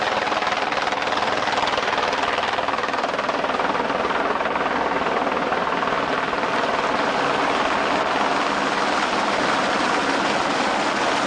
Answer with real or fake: real